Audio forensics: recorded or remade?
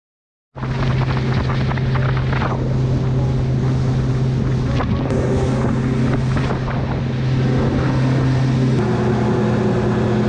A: recorded